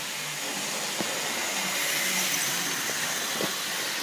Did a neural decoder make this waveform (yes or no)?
no